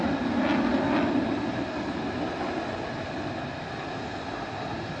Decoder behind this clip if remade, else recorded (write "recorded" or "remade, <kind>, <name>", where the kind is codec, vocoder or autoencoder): recorded